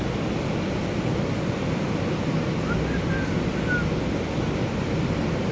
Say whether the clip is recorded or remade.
recorded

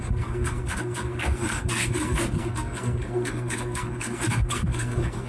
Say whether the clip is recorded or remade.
remade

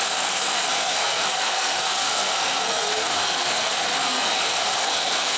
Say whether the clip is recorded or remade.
remade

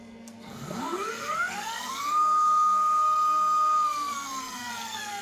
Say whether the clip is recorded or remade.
remade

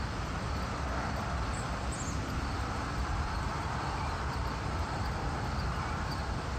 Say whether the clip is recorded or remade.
recorded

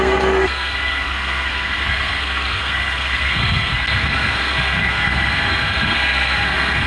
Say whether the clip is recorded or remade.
remade